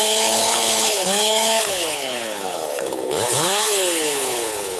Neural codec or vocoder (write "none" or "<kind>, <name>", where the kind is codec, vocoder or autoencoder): codec, HILCodec